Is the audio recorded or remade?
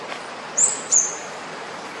remade